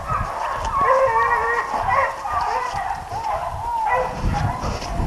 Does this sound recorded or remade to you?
recorded